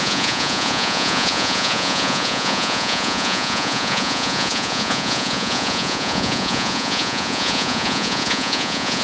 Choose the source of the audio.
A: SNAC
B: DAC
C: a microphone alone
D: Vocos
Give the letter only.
D